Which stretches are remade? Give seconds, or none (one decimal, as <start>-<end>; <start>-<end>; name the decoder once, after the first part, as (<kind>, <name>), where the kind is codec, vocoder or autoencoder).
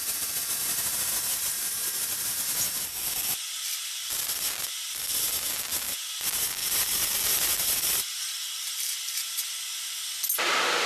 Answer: 1.3-2.0 (vocoder, BigVGAN v2); 6.6-9.2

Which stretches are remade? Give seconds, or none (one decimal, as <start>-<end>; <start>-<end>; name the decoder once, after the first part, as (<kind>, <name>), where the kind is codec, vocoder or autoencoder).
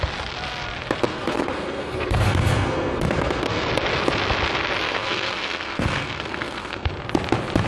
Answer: 1.1-3.7 (codec, SNAC); 4.8-6.9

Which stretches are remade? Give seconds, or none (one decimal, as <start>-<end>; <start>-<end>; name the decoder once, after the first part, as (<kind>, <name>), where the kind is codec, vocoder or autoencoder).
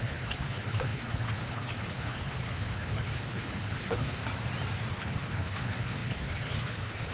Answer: 0.0-4.2 (codec, HILCodec); 4.9-7.1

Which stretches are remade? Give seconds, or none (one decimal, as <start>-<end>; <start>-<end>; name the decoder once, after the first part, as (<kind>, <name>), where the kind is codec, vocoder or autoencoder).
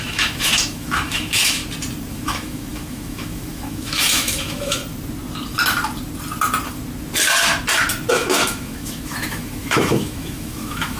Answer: 0.0-1.6 (autoencoder, DAC-VAE); 2.1-4.8; 8.1-11.0